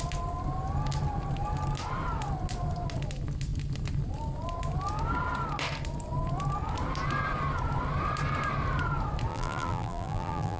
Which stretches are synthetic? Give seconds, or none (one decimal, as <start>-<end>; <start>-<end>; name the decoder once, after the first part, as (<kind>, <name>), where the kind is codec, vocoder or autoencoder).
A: 9.3-10.6 (vocoder, BigVGAN v2)